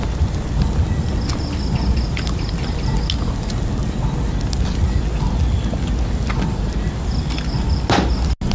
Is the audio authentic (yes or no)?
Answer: yes